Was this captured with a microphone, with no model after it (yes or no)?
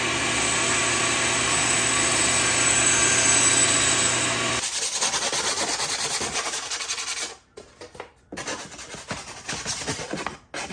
yes